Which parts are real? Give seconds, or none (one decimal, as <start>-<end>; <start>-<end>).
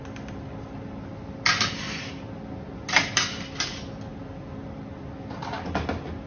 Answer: 0.0-6.3